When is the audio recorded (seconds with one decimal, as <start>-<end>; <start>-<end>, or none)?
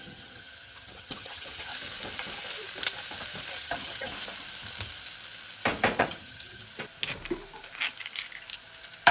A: 1.7-3.5; 4.1-6.0; 6.6-9.1